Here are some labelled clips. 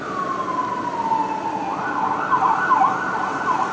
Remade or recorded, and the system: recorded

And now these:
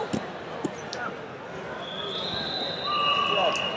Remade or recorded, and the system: recorded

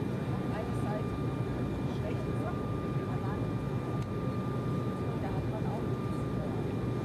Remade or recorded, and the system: recorded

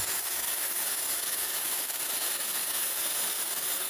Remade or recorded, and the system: remade, codec, DAC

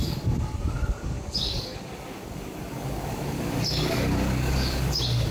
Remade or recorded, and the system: remade, codec, DAC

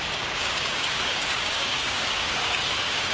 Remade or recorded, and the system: remade, codec, DAC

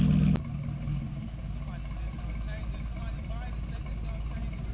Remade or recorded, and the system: recorded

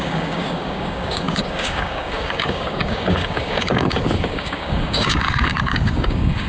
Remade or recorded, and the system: remade, codec, DAC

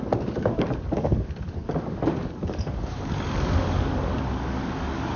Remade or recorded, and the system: remade, codec, DAC